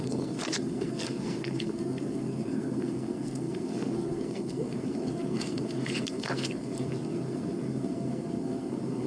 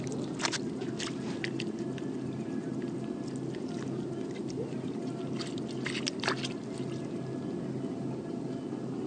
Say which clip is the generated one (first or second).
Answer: first